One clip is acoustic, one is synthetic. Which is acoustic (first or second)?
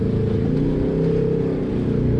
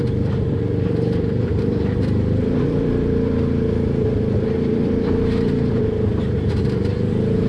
first